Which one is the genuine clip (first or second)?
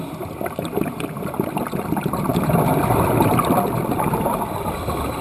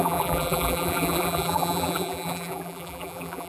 first